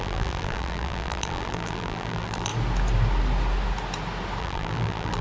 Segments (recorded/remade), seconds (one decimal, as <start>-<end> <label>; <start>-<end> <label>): 0.0-2.5 remade; 2.5-4.4 recorded; 4.4-5.2 remade